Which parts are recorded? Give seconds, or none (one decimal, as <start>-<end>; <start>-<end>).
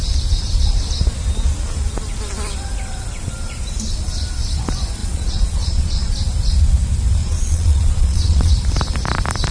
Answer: 0.0-5.0; 6.1-7.2; 8.5-9.5